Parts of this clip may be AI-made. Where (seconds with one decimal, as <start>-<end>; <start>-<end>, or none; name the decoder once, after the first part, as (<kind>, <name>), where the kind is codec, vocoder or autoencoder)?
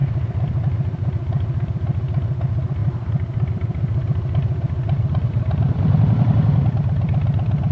0.0-0.6 (vocoder, BigVGAN v2); 2.8-7.7